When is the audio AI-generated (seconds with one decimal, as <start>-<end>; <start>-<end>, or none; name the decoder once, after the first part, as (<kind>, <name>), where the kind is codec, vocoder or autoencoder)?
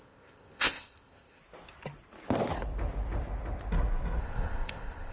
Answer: 0.0-1.4 (codec, ZipCodec); 4.2-5.1